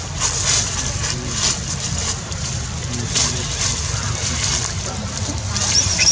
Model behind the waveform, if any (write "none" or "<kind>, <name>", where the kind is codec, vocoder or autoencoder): none